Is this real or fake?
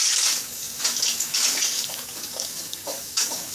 fake